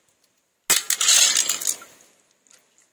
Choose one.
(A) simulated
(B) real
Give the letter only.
B